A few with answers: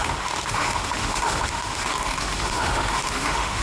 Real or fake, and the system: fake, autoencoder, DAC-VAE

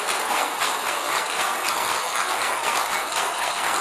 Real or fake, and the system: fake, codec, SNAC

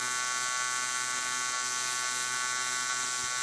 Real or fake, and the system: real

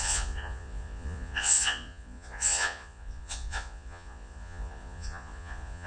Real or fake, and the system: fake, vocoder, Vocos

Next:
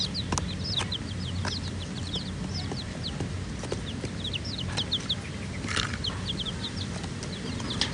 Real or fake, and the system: fake, vocoder, BigVGAN v2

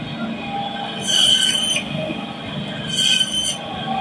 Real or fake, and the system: real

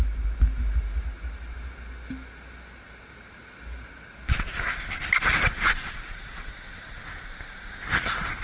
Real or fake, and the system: real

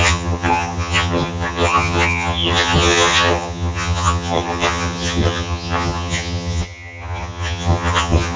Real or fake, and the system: fake, vocoder, HiFi-GAN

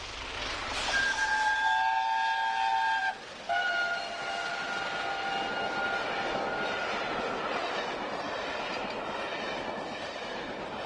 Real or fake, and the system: real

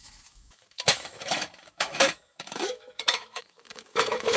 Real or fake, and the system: fake, autoencoder, DAC-VAE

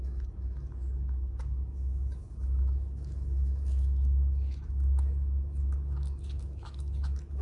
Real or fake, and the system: fake, autoencoder, DAC-VAE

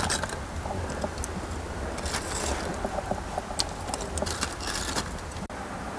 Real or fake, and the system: real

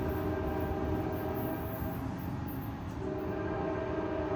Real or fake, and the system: real